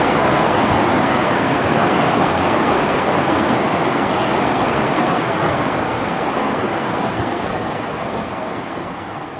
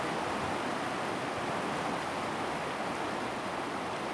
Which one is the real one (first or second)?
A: second